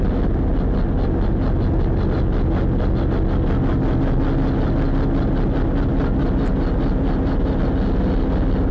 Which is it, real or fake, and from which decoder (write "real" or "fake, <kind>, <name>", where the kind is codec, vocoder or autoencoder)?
real